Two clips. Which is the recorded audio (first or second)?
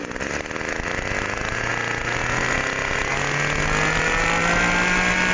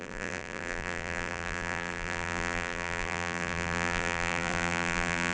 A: first